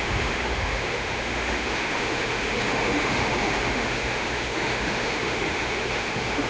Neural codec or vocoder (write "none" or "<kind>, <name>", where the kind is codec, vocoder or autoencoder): autoencoder, DAC-VAE